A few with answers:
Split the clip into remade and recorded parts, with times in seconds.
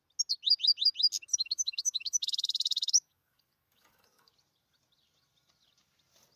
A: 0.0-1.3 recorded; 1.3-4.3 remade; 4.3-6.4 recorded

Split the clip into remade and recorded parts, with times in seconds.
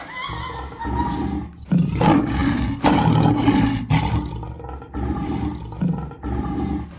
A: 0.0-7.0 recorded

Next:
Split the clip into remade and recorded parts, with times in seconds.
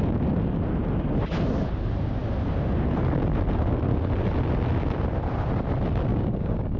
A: 0.0-6.1 recorded; 6.1-6.8 remade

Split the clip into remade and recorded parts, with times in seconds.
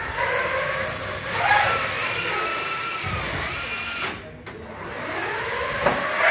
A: 0.0-6.3 recorded